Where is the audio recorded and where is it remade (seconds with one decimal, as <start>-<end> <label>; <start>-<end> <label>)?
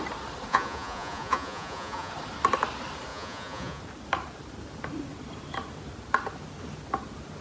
0.0-0.5 recorded; 0.5-2.1 remade; 2.1-3.1 recorded; 3.1-3.8 remade; 3.8-7.4 recorded